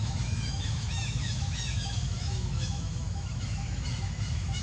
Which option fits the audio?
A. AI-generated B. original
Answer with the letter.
A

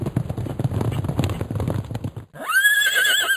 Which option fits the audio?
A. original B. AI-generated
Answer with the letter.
A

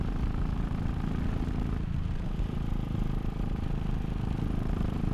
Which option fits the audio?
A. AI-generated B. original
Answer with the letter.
B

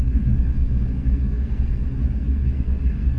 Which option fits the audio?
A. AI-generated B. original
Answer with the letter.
A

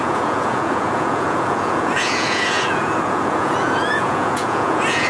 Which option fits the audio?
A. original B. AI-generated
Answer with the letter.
B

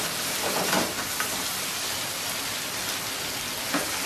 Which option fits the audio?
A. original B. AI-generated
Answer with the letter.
A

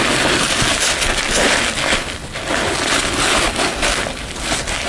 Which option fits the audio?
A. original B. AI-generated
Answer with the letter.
A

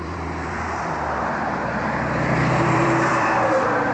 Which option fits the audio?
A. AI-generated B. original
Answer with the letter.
A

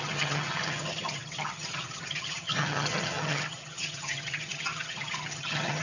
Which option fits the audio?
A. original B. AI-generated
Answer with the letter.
B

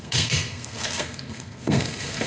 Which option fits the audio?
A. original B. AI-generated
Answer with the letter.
B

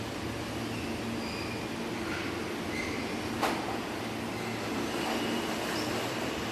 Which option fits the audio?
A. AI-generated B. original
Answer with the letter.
B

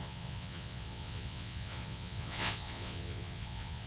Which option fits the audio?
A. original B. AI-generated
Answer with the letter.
B